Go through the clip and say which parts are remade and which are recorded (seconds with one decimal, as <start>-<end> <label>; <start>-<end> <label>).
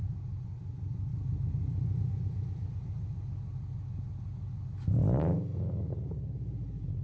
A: 0.0-7.0 recorded